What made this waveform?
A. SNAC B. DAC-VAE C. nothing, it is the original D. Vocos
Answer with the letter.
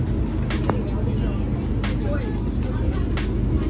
C